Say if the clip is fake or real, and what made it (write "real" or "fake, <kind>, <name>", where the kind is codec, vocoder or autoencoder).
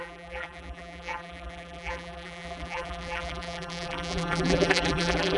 fake, vocoder, BigVGAN v2